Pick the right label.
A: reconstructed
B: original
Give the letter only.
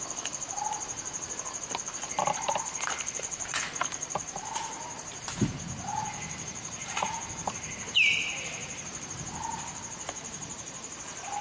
A